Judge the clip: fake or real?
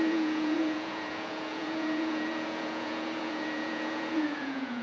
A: fake